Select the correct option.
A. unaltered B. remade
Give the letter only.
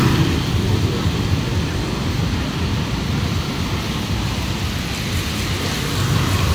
A